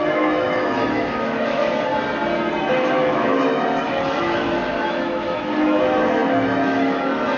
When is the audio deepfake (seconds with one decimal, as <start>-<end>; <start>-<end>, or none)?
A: 0.0-1.9; 2.7-7.4